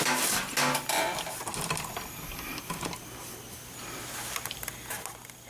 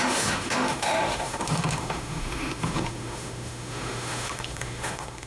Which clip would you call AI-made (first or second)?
second